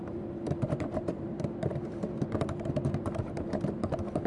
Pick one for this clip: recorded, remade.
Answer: remade